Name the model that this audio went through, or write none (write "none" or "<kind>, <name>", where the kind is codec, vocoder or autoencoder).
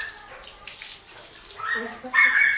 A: none